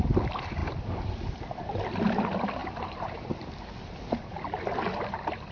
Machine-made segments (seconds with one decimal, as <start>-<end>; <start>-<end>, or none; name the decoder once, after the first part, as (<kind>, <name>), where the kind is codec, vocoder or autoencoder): 2.6-3.5 (vocoder, BigVGAN v2)

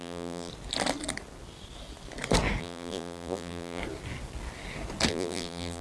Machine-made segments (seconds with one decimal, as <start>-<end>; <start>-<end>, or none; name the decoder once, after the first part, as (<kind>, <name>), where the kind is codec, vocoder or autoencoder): 0.0-0.5 (vocoder, BigVGAN v2); 2.6-3.8; 5.1-5.8

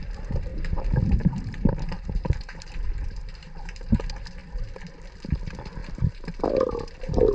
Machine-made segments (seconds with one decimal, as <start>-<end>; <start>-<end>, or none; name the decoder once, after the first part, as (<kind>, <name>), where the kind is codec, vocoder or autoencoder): 0.5-2.9 (vocoder, BigVGAN v2)